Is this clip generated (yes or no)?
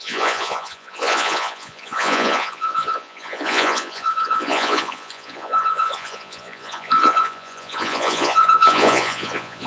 yes